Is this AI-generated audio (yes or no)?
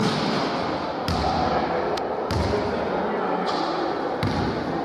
no